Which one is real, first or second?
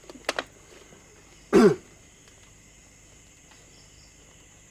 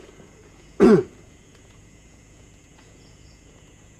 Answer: first